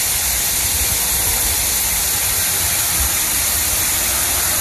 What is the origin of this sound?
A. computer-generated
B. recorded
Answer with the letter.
B